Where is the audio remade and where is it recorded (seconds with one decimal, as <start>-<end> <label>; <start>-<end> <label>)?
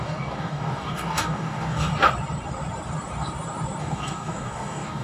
0.0-1.9 remade; 1.9-3.8 recorded; 3.8-5.0 remade